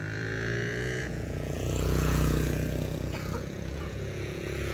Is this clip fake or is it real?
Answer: fake